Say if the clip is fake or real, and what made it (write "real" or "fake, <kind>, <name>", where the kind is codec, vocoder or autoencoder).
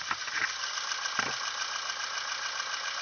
real